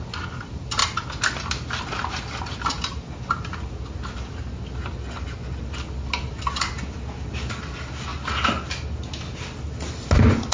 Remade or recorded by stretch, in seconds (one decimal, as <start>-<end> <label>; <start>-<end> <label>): 0.0-10.5 recorded